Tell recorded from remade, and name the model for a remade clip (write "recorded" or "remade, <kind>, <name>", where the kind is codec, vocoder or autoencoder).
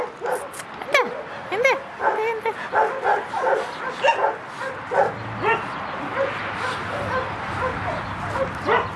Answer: recorded